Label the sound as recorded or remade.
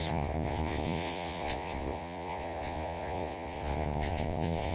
remade